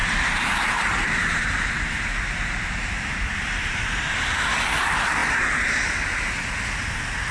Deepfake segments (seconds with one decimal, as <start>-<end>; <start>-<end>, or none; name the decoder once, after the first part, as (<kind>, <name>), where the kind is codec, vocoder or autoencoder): 0.0-4.4 (vocoder, BigVGAN v2)